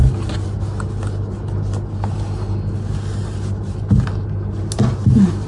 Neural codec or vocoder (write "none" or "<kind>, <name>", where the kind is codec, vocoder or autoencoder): none